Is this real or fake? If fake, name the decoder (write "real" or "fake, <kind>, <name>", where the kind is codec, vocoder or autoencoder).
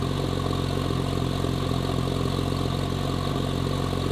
real